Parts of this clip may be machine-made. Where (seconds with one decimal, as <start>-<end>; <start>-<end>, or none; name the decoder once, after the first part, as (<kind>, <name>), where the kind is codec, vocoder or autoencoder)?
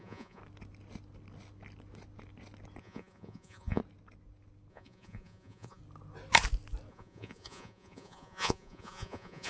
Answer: 0.0-0.4 (vocoder, Vocos); 2.8-3.8; 4.7-5.8; 6.9-9.5